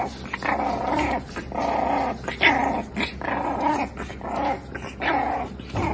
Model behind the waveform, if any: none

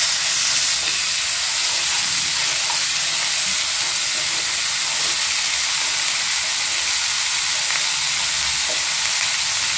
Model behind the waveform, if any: none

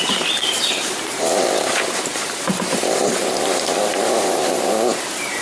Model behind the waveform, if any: vocoder, BigVGAN v2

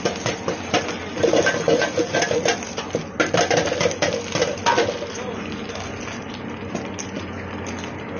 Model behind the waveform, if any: none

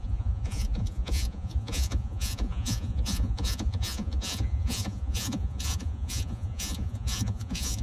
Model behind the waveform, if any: vocoder, Vocos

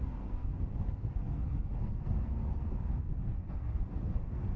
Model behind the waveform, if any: codec, SNAC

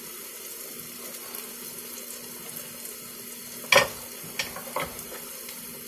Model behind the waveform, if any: none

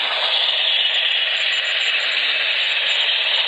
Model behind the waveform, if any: none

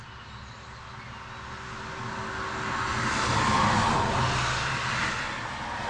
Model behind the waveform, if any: none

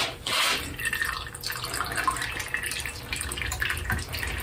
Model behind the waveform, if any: vocoder, BigVGAN v2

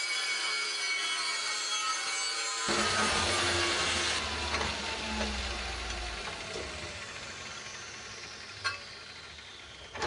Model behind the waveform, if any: none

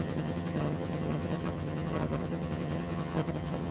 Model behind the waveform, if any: vocoder, HiFi-GAN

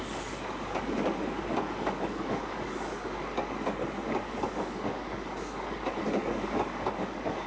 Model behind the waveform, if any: codec, DAC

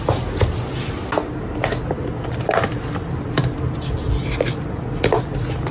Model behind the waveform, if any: none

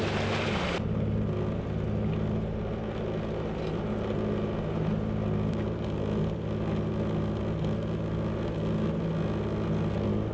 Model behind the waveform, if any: none